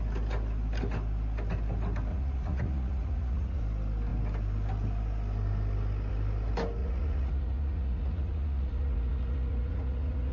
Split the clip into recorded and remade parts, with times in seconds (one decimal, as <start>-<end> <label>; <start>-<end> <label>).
0.0-2.1 recorded; 2.1-3.6 remade; 3.6-6.8 recorded; 6.8-10.3 remade